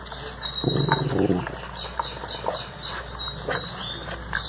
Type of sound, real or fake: real